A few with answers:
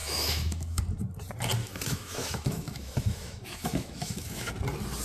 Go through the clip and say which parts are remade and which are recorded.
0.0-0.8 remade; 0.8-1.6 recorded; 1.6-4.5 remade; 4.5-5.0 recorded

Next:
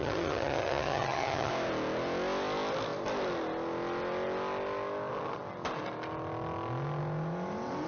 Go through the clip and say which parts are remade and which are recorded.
0.0-1.5 remade; 1.5-7.9 recorded

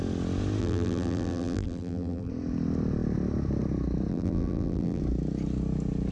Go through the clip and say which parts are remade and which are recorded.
0.0-0.6 recorded; 0.6-2.3 remade; 2.3-4.1 recorded; 4.1-5.0 remade; 5.0-6.1 recorded

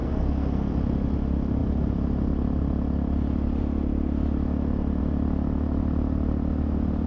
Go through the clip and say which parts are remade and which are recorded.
0.0-0.7 remade; 0.7-7.1 recorded

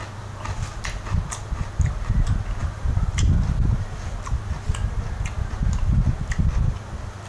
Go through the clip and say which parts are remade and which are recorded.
0.0-2.6 recorded; 2.6-3.7 remade; 3.7-7.3 recorded

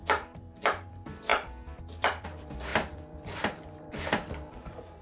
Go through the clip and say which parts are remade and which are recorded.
0.0-5.0 remade

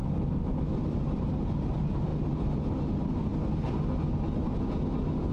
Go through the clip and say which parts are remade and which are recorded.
0.0-5.3 recorded